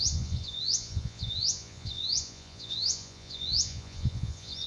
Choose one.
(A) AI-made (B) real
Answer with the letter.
A